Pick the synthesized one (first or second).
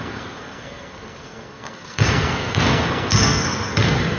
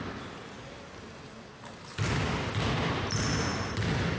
first